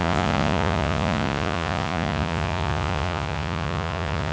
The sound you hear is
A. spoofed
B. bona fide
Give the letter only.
A